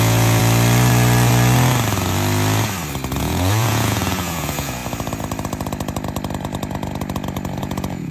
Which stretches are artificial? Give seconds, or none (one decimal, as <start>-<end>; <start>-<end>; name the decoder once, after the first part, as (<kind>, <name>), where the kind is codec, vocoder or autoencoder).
0.0-0.4 (vocoder, Vocos); 3.2-4.8; 7.6-8.1